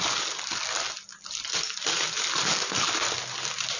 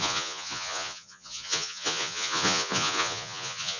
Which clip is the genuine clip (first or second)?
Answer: first